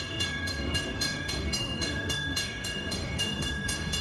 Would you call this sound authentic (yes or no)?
no